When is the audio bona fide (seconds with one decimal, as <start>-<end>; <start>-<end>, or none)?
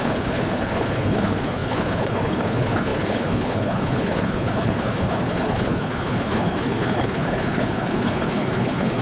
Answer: none